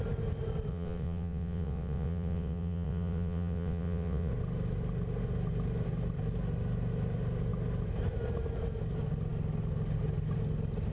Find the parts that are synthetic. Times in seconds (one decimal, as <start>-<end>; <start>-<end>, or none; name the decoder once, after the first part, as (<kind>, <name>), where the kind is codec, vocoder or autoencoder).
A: 0.7-4.3 (vocoder, WaveNeXt)